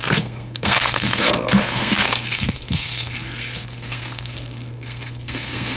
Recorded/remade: remade